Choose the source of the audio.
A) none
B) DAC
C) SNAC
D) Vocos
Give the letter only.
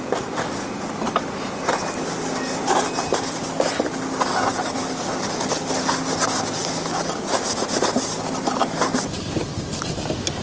A